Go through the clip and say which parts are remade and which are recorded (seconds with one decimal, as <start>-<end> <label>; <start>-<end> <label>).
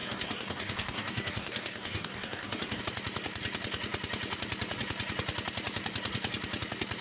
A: 0.0-2.8 remade; 2.8-7.0 recorded